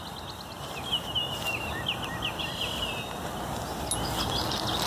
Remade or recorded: recorded